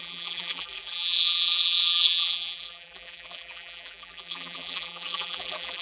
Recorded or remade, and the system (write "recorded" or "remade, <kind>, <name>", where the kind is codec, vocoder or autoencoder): remade, vocoder, BigVGAN v2